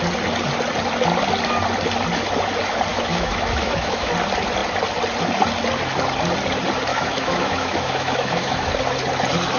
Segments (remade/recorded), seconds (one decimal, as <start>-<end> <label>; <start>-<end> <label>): 0.0-2.9 recorded; 2.9-4.1 remade; 4.1-6.9 recorded; 6.9-8.7 remade; 8.7-9.6 recorded

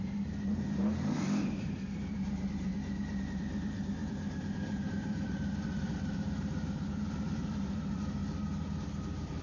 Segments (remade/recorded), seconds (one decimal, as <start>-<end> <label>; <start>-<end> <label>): 0.0-2.7 remade; 2.7-3.2 recorded; 3.2-8.2 remade; 8.2-8.9 recorded; 8.9-9.4 remade